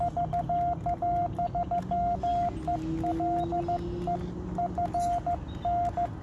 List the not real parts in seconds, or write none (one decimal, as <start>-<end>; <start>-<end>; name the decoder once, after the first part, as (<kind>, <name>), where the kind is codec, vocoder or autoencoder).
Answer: none